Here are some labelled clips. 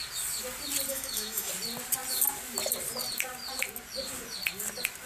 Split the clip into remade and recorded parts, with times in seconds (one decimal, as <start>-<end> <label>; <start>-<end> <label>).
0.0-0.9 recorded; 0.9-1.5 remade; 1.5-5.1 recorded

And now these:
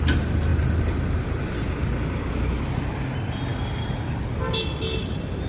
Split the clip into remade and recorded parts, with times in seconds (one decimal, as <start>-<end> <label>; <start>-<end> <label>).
0.0-5.5 recorded

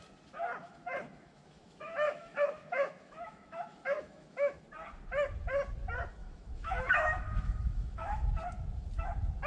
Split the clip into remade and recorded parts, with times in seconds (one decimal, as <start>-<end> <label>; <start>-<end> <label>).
0.0-0.6 recorded; 0.6-4.6 remade; 4.6-6.2 recorded; 6.2-8.3 remade; 8.3-9.5 recorded